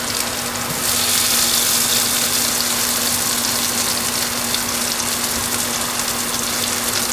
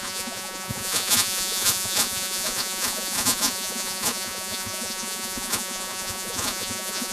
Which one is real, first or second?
first